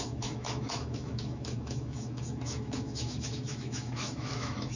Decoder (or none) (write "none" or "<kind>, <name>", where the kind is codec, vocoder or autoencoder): autoencoder, DAC-VAE